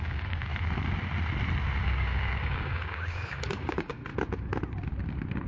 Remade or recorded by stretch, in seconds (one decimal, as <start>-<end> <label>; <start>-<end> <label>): 0.0-0.5 remade; 0.5-1.8 recorded; 1.8-4.1 remade; 4.1-5.5 recorded